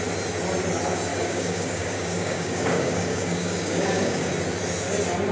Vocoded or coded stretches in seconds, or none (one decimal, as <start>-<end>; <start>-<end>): 1.1-4.3